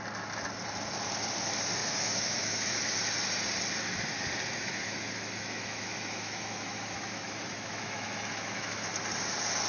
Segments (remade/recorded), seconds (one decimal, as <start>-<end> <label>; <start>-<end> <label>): 0.0-1.8 recorded; 1.8-2.8 remade; 2.8-4.6 recorded; 4.6-8.9 remade; 8.9-9.7 recorded